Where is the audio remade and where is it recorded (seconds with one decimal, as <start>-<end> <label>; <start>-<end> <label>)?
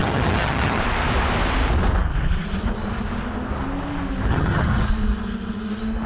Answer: 0.0-0.8 remade; 0.8-4.3 recorded; 4.3-4.9 remade; 4.9-6.1 recorded